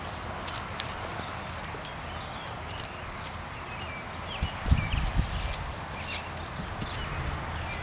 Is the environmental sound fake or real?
real